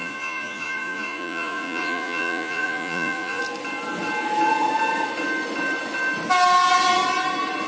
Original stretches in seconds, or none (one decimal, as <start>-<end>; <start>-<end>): 3.4-7.7